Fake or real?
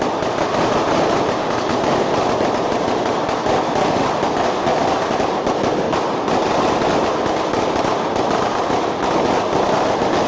real